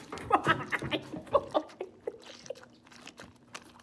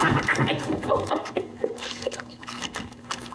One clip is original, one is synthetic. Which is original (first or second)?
first